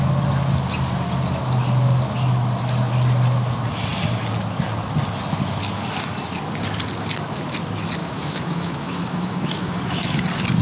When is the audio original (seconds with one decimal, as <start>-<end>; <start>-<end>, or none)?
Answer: 0.0-8.0; 10.2-10.6